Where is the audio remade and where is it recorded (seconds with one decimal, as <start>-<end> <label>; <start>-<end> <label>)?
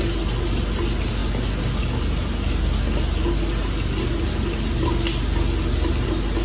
0.0-6.4 recorded